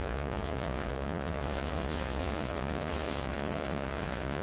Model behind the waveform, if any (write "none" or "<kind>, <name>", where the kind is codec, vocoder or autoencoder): vocoder, Vocos